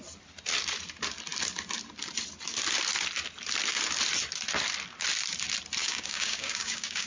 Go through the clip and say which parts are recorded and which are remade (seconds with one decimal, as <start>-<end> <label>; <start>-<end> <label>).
0.0-5.8 recorded; 5.8-7.1 remade